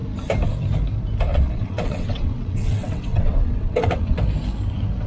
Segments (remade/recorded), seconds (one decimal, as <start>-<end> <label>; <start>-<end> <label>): 0.0-1.3 recorded; 1.3-4.2 remade; 4.2-5.1 recorded